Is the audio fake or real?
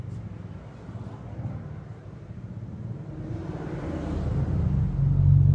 real